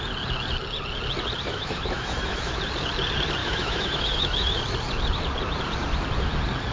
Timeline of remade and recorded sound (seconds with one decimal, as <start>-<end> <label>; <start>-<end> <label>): 0.0-1.5 recorded; 1.5-2.6 remade; 2.6-3.4 recorded; 3.4-4.6 remade; 4.6-6.7 recorded